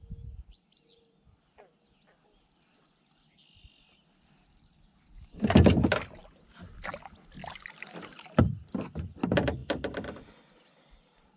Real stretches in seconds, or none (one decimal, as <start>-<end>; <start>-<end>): 0.0-11.4